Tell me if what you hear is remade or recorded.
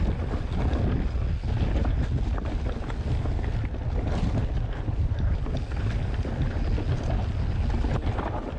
recorded